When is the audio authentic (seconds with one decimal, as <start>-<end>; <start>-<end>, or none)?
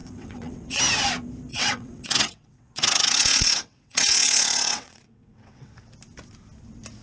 0.8-1.5; 5.7-7.0